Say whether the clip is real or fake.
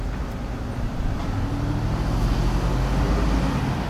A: real